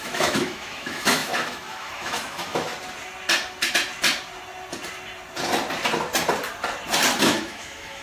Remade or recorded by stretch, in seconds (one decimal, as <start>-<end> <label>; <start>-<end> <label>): 0.0-2.7 remade; 2.7-7.2 recorded; 7.2-8.0 remade